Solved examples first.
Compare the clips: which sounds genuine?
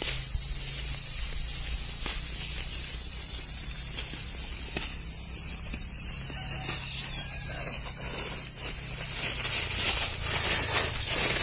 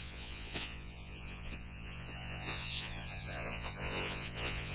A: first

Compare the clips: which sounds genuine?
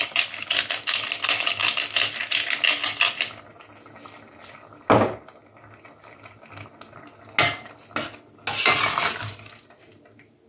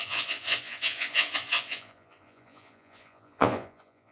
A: first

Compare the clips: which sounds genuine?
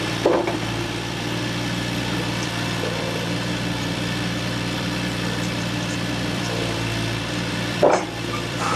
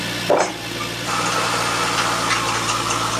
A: second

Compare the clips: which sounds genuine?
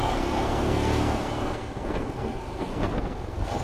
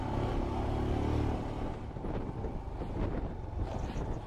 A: second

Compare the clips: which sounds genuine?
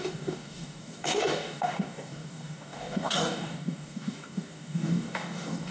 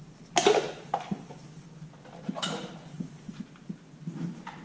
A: second